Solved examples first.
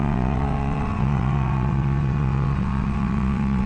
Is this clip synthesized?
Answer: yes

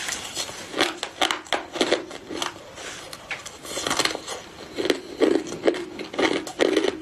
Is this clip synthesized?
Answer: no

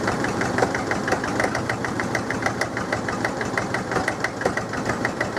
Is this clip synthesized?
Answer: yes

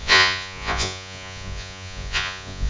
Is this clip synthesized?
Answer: yes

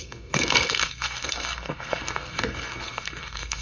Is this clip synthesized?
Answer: yes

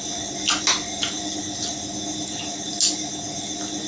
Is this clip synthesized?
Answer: no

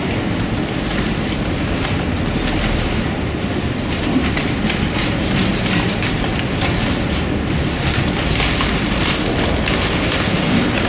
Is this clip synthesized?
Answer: no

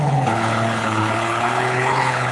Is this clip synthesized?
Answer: yes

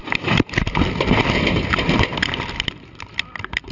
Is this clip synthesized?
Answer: no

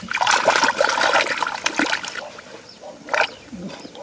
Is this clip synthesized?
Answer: no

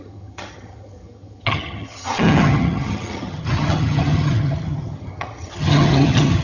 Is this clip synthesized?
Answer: yes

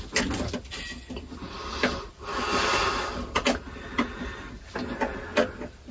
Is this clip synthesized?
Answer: no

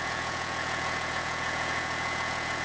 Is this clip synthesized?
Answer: yes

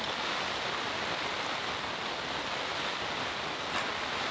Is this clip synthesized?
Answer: no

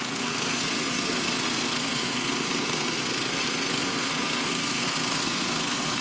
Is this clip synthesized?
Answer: yes